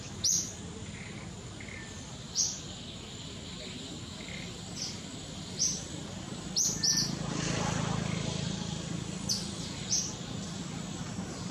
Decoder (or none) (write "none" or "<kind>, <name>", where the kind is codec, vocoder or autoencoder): none